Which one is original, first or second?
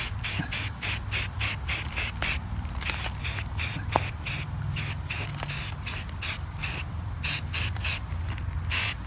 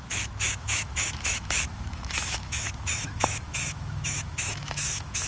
first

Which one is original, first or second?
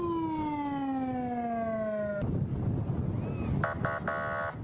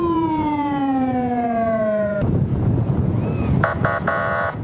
first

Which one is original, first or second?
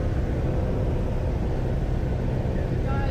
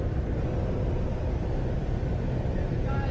first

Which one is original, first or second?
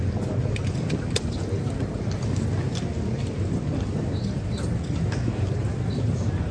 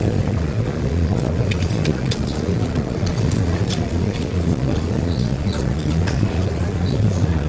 first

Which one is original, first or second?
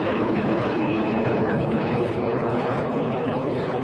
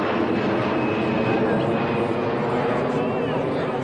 second